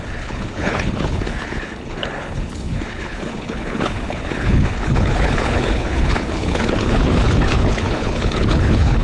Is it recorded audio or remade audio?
remade